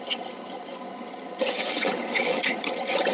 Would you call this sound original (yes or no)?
no